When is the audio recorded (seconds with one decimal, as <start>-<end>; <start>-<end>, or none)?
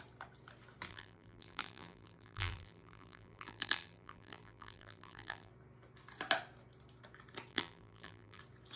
0.0-0.9; 5.5-7.5; 8.4-8.8